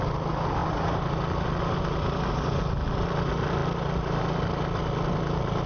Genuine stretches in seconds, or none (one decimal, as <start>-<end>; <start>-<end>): 0.0-5.7